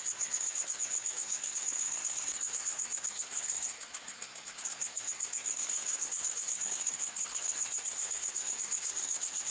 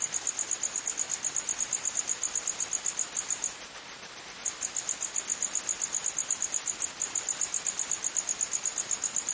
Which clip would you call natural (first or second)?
second